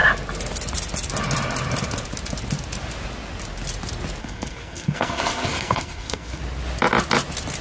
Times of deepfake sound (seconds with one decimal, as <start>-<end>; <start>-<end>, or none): 4.2-6.4